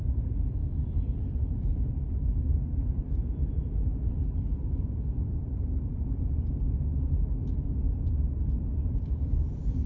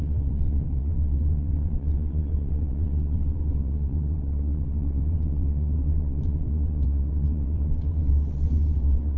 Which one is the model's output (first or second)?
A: second